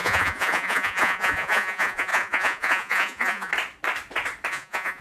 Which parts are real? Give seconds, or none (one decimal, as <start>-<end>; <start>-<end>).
3.5-4.5